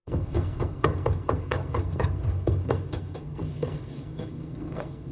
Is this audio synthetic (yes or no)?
yes